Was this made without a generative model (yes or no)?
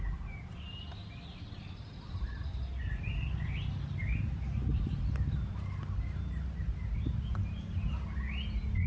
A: yes